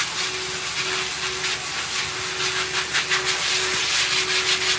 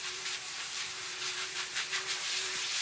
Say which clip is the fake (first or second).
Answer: second